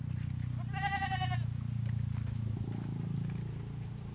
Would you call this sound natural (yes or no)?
yes